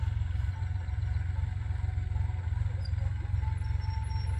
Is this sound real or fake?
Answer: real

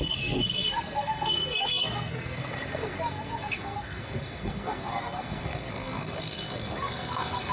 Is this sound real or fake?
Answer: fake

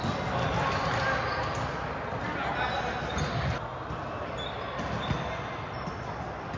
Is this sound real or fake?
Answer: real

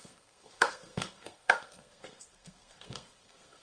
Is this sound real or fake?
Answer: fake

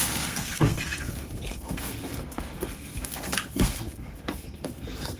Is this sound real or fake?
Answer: fake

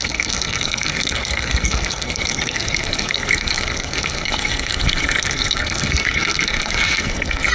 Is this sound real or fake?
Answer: fake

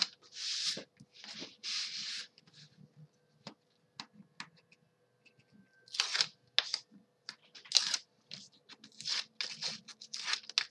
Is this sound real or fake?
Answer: real